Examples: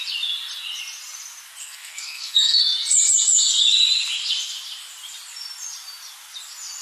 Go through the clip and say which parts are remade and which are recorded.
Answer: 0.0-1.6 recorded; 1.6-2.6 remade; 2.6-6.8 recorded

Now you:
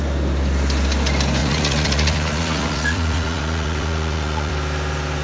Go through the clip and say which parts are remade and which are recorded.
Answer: 0.0-1.4 recorded; 1.4-4.5 remade; 4.5-5.2 recorded

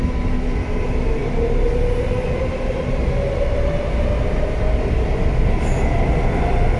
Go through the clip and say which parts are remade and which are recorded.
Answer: 0.0-6.8 recorded

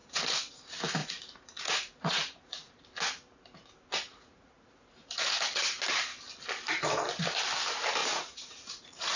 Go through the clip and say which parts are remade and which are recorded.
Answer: 0.0-0.5 remade; 0.5-1.0 recorded; 1.0-2.7 remade; 2.7-4.1 recorded; 4.1-5.6 remade; 5.6-8.0 recorded; 8.0-9.2 remade

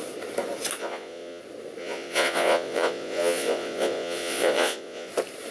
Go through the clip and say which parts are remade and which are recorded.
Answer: 0.0-0.8 recorded; 0.8-1.4 remade; 1.4-1.8 recorded; 1.8-5.1 remade; 5.1-5.5 recorded

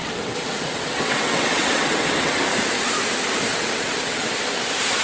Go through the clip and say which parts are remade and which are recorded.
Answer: 0.0-2.4 remade; 2.4-3.5 recorded; 3.5-4.3 remade; 4.3-5.0 recorded